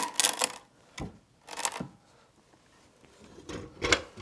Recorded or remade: recorded